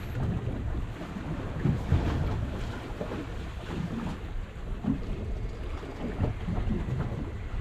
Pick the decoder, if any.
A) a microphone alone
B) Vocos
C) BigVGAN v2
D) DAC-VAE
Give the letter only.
A